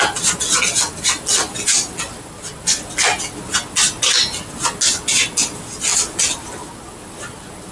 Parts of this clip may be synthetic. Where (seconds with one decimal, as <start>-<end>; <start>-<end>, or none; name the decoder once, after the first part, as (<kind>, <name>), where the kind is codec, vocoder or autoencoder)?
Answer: none